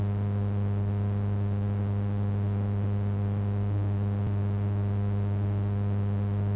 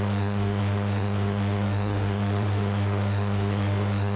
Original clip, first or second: first